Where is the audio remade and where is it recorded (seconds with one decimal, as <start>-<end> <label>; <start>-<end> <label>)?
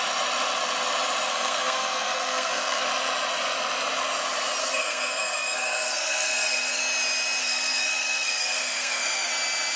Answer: 0.0-1.3 recorded; 1.3-2.8 remade; 2.8-4.6 recorded; 4.6-6.8 remade; 6.8-7.4 recorded; 7.4-9.3 remade; 9.3-9.8 recorded